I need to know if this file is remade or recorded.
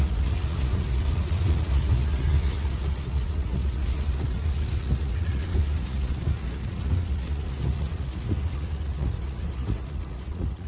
remade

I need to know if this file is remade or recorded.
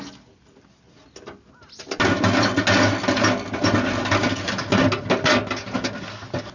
recorded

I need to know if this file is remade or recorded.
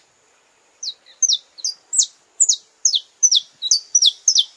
recorded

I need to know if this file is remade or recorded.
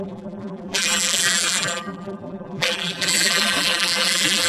remade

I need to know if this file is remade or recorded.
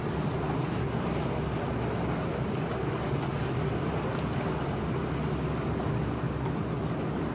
recorded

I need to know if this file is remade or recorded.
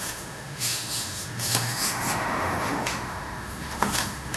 remade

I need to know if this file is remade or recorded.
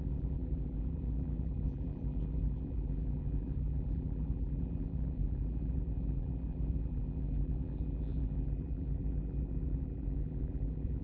remade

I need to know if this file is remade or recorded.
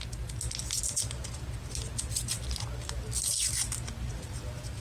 recorded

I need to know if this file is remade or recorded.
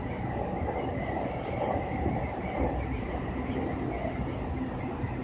recorded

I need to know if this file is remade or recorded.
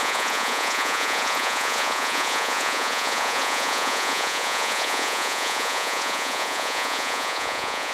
remade